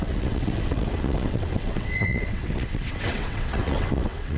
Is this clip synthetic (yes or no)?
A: yes